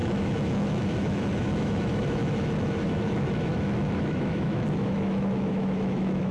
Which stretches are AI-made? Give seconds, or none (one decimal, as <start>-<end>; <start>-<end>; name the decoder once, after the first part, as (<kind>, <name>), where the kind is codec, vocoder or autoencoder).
0.0-6.3 (autoencoder, DAC-VAE)